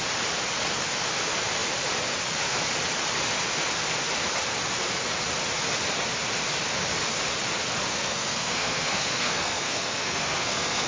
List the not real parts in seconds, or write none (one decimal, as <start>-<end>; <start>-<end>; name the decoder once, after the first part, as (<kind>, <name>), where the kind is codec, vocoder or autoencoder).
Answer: 7.9-10.9 (codec, SNAC)

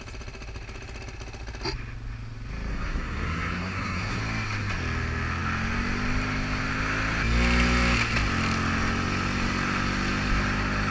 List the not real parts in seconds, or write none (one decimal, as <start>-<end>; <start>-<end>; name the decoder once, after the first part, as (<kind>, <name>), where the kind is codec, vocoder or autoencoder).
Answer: 2.7-4.2 (codec, SNAC)

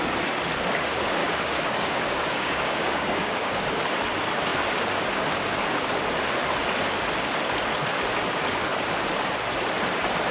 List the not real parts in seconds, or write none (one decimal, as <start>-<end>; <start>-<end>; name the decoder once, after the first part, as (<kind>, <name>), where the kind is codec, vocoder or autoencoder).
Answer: 1.2-3.7 (codec, DAC)

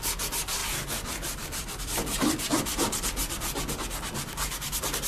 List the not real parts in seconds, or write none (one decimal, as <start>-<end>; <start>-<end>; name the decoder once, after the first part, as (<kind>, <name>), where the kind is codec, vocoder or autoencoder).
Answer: 0.6-3.7 (vocoder, BigVGAN v2)

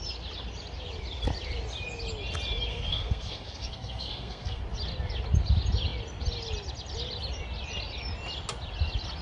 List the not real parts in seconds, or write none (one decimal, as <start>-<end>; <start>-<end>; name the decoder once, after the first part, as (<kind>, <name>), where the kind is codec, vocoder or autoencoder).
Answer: 2.7-4.6 (codec, SNAC)

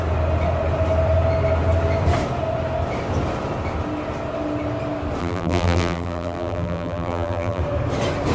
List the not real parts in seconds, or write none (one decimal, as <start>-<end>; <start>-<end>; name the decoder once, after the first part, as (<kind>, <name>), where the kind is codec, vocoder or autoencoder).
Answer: 5.2-7.6 (vocoder, BigVGAN v2)